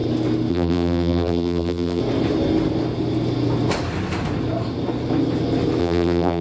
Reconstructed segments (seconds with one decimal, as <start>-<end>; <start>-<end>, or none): 0.5-2.0; 5.8-6.4